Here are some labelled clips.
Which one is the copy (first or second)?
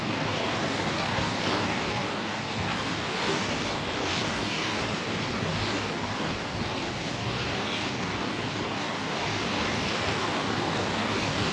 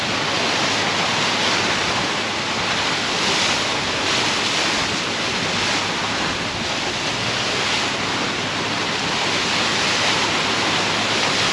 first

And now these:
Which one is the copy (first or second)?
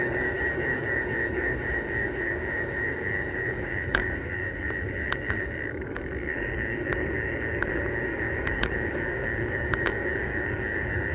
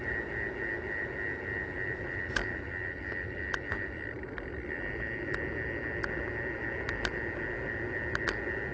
first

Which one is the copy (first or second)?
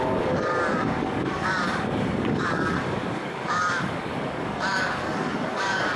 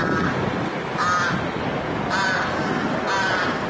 first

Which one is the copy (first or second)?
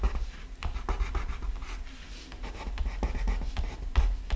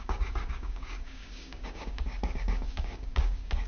second